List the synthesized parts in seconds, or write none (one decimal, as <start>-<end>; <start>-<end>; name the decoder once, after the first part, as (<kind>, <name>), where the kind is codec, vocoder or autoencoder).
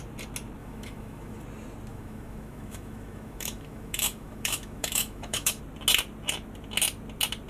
0.6-1.4 (autoencoder, DAC-VAE); 1.9-5.6